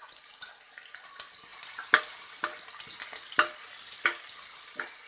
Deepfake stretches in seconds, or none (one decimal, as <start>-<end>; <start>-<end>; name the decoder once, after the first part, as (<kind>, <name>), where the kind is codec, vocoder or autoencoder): none